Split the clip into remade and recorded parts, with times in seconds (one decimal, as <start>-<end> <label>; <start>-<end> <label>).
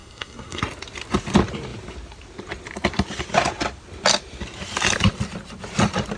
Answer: 0.0-0.6 remade; 0.6-6.2 recorded